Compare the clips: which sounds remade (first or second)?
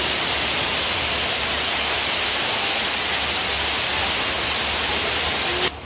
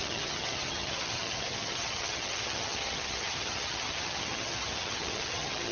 second